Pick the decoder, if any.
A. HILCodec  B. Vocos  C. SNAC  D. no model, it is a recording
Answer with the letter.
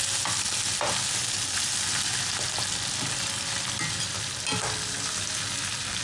D